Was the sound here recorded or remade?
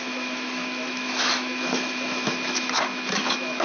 remade